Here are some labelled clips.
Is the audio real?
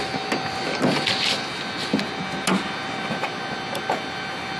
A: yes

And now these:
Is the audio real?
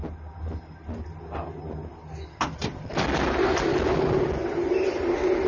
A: yes